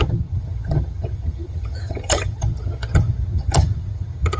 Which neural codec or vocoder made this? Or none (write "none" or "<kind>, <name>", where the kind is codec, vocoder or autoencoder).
vocoder, HiFi-GAN